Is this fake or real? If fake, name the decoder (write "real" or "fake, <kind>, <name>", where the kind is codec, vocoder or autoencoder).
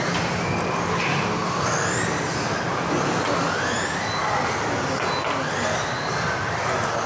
real